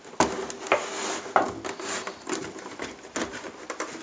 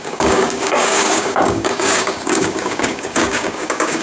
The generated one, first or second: second